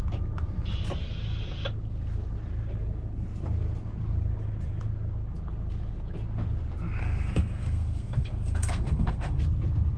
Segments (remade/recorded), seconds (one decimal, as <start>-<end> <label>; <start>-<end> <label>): 0.0-7.0 recorded; 7.0-9.4 remade; 9.4-10.0 recorded